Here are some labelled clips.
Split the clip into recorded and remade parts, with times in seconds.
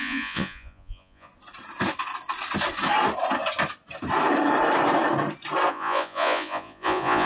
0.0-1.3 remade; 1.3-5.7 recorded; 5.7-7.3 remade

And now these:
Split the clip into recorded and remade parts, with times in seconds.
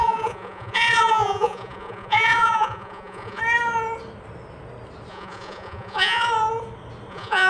0.0-3.4 remade; 3.4-5.1 recorded; 5.1-6.3 remade; 6.3-7.1 recorded; 7.1-7.5 remade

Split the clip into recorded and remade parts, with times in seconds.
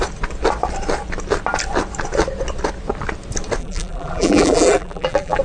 0.0-3.6 recorded; 3.6-5.4 remade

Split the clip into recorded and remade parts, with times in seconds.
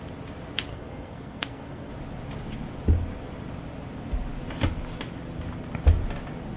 0.0-0.7 recorded; 0.7-1.9 remade; 1.9-6.6 recorded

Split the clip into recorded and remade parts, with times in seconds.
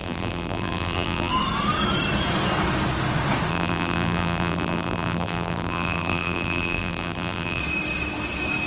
0.0-1.3 remade; 1.3-3.5 recorded; 3.5-7.6 remade; 7.6-8.7 recorded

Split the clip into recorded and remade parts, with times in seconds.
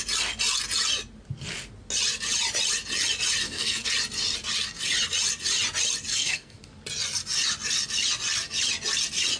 0.0-3.4 recorded; 3.4-3.9 remade; 3.9-6.1 recorded; 6.1-6.6 remade; 6.6-9.4 recorded